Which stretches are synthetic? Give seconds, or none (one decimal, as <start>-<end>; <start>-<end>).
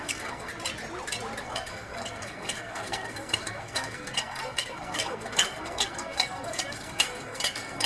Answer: 0.0-0.5; 1.4-7.9